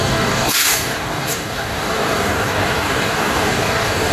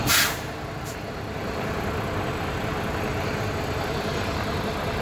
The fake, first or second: first